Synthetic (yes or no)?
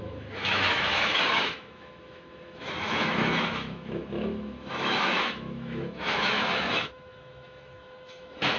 yes